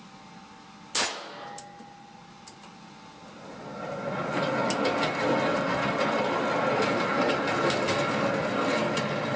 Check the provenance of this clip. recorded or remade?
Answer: recorded